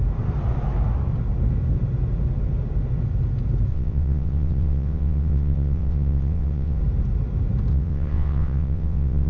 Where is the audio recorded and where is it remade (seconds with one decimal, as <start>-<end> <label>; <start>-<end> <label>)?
0.0-3.7 recorded; 3.7-6.8 remade; 6.8-7.7 recorded; 7.7-9.3 remade